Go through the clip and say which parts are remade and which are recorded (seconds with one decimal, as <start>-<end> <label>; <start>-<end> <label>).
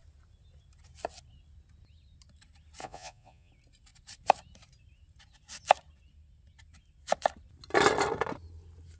0.0-2.8 recorded; 2.8-3.5 remade; 3.5-9.0 recorded